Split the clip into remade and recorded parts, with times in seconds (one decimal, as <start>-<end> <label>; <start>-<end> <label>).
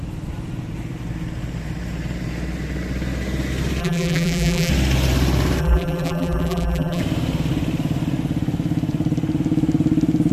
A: 0.0-3.8 recorded; 3.8-4.7 remade; 4.7-5.6 recorded; 5.6-7.0 remade; 7.0-10.3 recorded